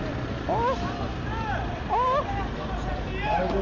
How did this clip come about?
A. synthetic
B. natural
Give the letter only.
B